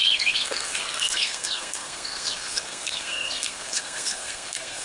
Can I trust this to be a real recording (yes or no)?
no